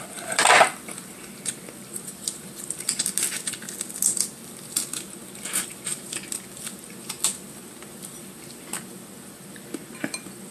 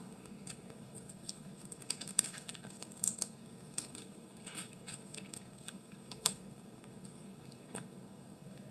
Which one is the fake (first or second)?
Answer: second